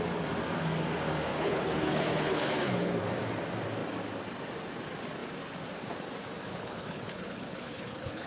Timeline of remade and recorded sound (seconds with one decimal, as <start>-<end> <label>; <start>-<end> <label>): 0.0-1.3 recorded; 1.3-3.0 remade; 3.0-6.5 recorded; 6.5-8.3 remade